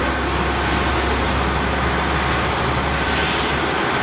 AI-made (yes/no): no